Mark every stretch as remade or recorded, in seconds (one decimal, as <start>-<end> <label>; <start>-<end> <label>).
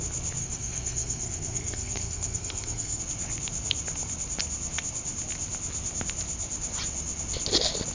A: 0.0-0.4 recorded; 0.4-3.0 remade; 3.0-7.9 recorded